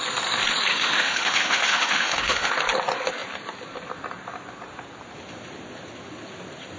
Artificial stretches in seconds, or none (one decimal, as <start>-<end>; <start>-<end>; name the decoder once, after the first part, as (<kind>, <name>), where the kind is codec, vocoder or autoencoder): 0.7-2.5 (autoencoder, DAC-VAE)